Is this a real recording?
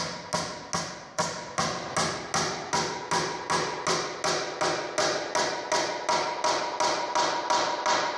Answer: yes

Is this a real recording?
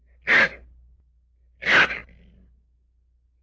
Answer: yes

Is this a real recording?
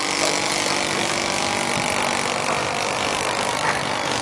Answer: yes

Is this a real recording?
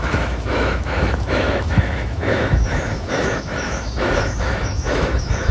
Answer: no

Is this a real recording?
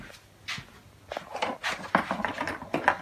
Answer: yes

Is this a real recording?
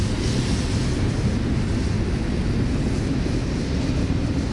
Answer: yes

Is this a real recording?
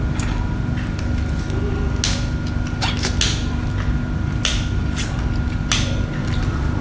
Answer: yes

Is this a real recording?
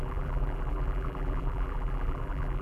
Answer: no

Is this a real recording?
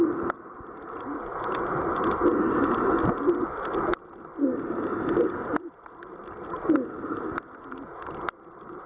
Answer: yes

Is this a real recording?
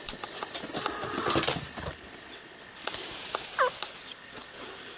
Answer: yes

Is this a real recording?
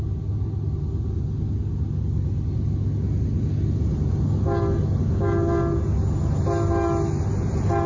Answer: yes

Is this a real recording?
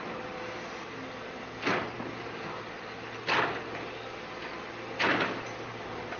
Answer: yes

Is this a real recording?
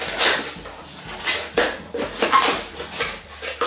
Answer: yes